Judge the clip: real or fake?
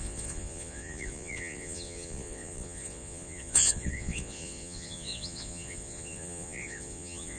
fake